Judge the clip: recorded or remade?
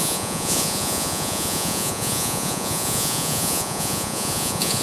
remade